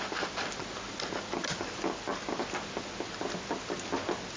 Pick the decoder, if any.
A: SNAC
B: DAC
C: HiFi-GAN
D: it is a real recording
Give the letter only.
D